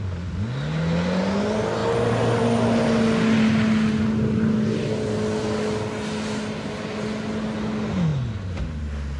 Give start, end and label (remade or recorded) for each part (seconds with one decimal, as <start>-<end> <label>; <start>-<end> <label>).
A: 0.0-9.2 recorded